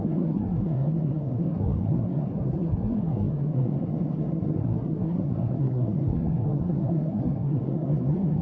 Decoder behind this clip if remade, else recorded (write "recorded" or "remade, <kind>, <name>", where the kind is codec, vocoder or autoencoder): remade, codec, SNAC